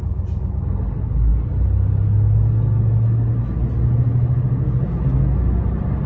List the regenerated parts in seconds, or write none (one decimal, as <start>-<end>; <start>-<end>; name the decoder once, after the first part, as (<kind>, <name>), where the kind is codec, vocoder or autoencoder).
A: none